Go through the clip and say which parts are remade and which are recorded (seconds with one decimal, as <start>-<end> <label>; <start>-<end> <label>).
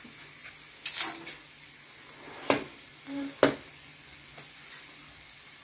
0.0-3.7 recorded; 3.7-4.9 remade; 4.9-5.6 recorded